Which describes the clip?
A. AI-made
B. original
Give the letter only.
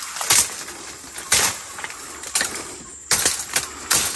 B